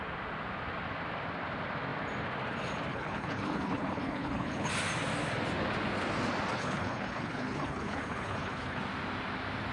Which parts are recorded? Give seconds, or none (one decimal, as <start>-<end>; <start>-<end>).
0.0-2.9; 4.7-6.5; 8.8-9.7